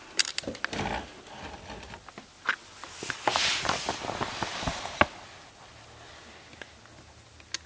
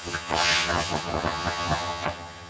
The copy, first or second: second